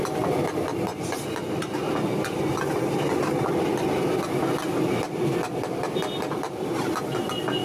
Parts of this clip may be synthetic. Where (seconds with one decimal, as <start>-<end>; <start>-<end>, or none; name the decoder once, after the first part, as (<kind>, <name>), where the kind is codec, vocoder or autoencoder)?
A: 0.0-0.9 (vocoder, BigVGAN v2); 2.2-7.6